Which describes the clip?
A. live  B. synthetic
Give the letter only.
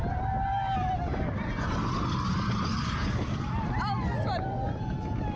A